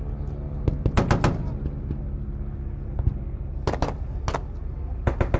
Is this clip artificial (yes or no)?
no